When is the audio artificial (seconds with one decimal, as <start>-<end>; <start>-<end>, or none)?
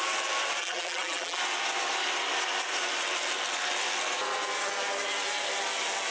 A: 0.6-1.4